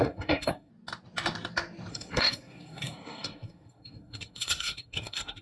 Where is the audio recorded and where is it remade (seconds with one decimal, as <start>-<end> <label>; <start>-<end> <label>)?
0.0-0.7 remade; 0.7-1.9 recorded; 1.9-5.4 remade